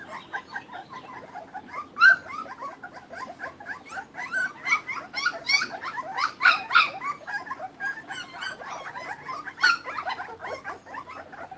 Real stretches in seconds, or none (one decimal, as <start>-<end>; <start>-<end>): 0.0-11.6